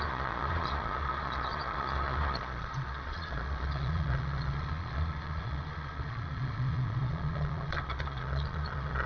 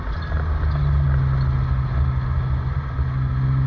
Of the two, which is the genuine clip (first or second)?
second